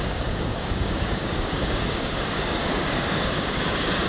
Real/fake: fake